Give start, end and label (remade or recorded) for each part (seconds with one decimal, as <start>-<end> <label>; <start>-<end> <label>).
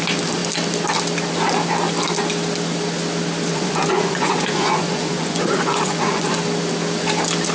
0.0-3.5 recorded; 3.5-6.3 remade; 6.3-7.5 recorded